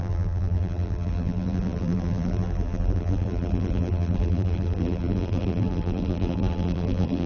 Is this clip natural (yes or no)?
no